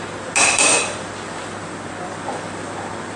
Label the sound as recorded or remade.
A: recorded